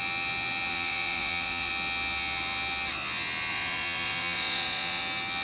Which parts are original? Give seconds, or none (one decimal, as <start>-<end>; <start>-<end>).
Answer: 0.0-0.7; 1.7-3.5; 5.0-5.4